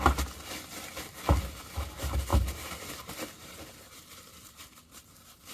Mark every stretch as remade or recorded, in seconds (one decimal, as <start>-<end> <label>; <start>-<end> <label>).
0.0-2.3 recorded; 2.3-5.5 remade